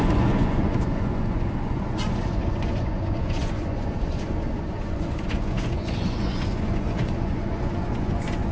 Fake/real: fake